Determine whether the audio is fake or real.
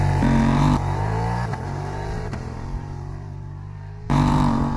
fake